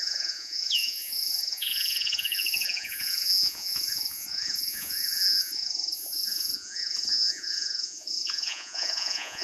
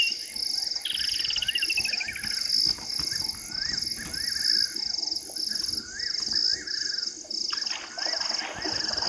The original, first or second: second